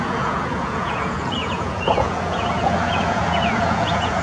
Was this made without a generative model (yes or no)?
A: no